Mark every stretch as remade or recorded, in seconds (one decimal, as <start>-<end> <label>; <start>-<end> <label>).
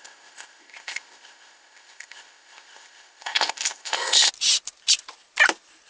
0.0-4.3 remade; 4.3-5.9 recorded